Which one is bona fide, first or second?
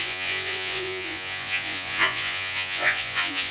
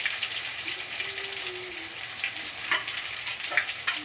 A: second